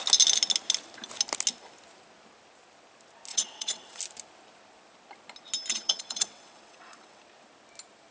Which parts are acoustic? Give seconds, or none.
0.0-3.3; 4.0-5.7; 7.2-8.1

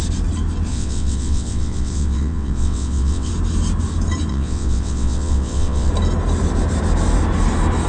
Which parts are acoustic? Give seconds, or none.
0.0-0.7; 3.3-4.3; 5.9-7.9

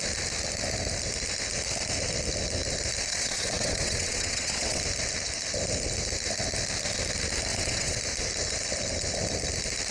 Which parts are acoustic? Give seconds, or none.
0.0-3.1; 4.8-7.5; 8.0-9.9

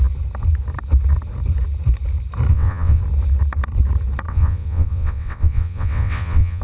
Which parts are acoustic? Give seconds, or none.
0.0-2.5; 3.0-4.3

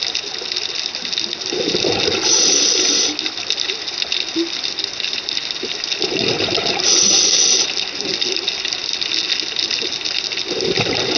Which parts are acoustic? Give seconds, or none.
0.0-11.2

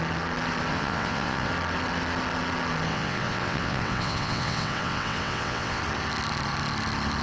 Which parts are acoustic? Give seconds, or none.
0.0-0.7; 1.5-2.9; 5.8-7.2

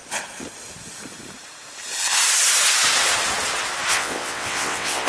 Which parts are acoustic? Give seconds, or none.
0.0-3.9